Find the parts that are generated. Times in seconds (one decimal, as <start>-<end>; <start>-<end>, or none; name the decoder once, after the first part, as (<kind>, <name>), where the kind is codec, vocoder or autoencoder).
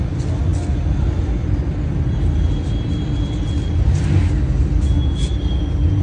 none